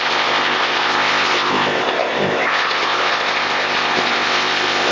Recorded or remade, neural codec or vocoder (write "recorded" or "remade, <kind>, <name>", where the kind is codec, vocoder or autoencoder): remade, codec, ZipCodec